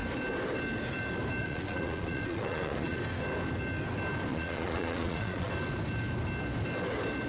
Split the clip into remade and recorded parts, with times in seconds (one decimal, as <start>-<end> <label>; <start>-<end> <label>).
0.0-1.4 recorded; 1.4-3.0 remade; 3.0-4.3 recorded; 4.3-5.5 remade; 5.5-7.3 recorded